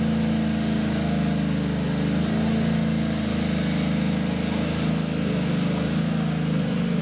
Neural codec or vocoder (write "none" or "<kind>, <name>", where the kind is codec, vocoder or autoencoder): none